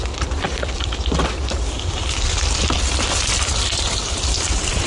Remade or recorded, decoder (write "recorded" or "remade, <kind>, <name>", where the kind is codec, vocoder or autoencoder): remade, vocoder, BigVGAN v2